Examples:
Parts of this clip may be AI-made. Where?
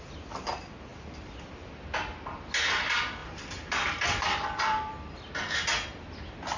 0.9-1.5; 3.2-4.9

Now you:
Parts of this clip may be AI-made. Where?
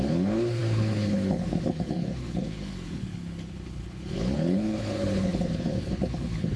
0.0-6.6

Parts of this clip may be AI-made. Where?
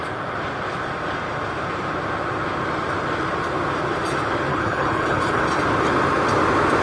4.5-5.4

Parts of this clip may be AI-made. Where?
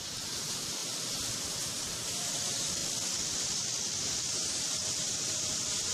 0.0-0.8; 1.8-2.8; 3.3-3.7; 4.3-5.9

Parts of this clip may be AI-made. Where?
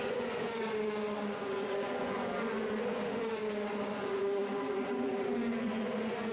0.0-6.3